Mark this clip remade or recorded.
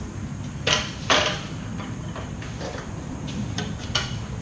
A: remade